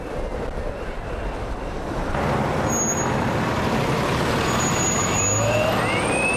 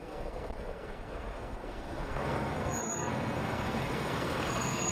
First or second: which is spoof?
second